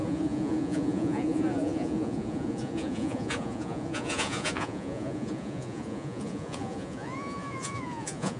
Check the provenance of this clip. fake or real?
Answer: fake